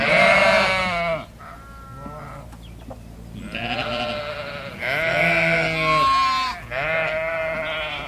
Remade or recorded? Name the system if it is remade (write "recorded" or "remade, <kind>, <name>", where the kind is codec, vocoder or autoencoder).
recorded